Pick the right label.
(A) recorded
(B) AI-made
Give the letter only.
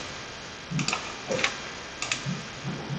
A